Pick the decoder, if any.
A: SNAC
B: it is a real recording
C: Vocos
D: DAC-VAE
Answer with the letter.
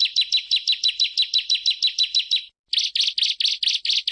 B